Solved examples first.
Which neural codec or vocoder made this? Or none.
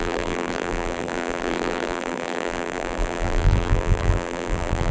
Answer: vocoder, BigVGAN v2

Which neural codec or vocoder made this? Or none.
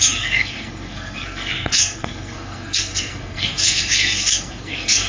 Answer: codec, SNAC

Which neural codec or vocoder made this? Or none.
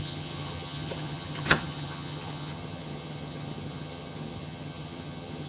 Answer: vocoder, HiFi-GAN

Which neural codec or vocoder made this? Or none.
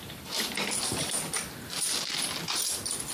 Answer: none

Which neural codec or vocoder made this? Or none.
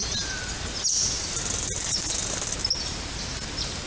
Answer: none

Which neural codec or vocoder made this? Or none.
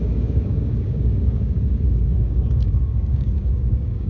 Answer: codec, DAC